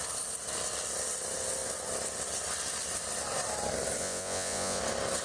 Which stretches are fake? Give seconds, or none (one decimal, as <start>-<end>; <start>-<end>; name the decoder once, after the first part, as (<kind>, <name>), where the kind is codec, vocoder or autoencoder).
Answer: 4.0-4.8 (vocoder, Vocos)